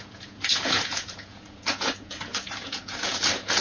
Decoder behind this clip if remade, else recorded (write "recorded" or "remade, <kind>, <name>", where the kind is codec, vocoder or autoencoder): remade, vocoder, Vocos